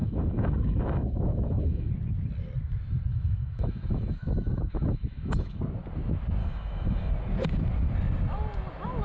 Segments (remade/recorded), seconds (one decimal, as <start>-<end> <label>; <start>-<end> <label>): 0.0-1.9 remade; 1.9-3.1 recorded; 3.1-5.6 remade; 5.6-6.4 recorded; 6.4-7.1 remade; 7.1-9.0 recorded